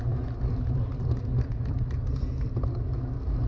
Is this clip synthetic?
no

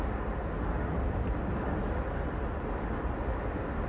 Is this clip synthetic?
no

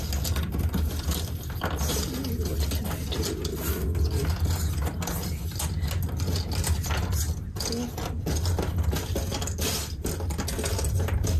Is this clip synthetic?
no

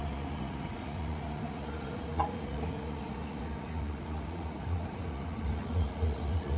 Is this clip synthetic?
yes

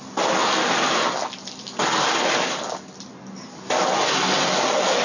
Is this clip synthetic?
no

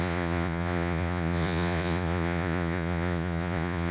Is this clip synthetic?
yes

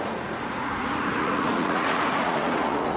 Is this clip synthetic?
yes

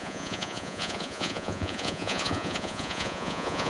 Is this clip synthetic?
yes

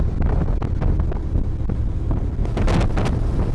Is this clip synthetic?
no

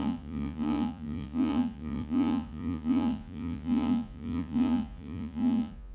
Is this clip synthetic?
yes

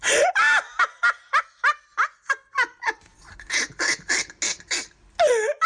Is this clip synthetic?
no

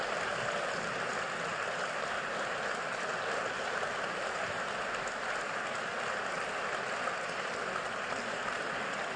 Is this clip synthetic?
no